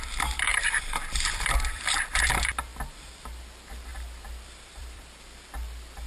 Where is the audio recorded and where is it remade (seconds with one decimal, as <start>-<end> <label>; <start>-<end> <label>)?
0.0-0.5 recorded; 0.5-2.3 remade; 2.3-2.7 recorded; 2.7-3.4 remade; 3.4-3.9 recorded; 3.9-5.2 remade; 5.2-6.1 recorded